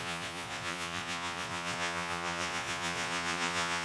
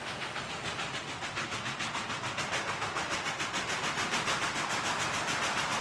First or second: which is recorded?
second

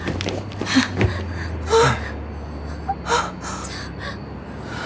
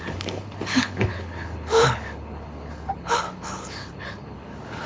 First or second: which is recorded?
first